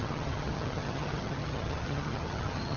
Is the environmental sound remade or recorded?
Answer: remade